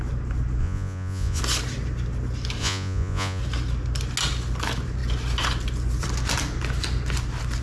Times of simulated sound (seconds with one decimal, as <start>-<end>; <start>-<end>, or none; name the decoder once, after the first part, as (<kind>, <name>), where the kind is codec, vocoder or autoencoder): 0.6-1.4 (vocoder, Vocos); 2.6-3.4